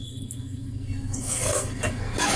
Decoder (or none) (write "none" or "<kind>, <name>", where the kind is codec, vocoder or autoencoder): codec, SNAC